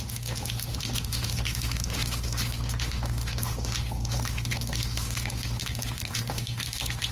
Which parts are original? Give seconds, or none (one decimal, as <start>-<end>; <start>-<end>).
none